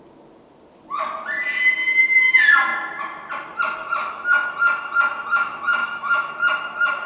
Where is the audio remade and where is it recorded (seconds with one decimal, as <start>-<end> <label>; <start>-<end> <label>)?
0.0-4.0 recorded; 4.0-4.5 remade; 4.5-5.8 recorded; 5.8-6.3 remade; 6.3-7.1 recorded